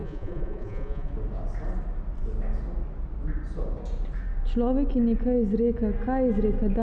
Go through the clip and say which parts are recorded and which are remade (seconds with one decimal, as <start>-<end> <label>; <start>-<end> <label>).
0.0-1.1 remade; 1.1-6.8 recorded